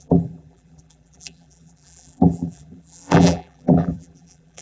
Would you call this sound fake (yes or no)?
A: yes